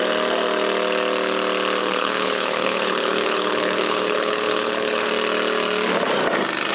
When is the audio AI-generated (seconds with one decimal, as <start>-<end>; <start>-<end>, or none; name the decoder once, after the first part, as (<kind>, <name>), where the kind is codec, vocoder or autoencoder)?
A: 1.8-5.1 (codec, HILCodec)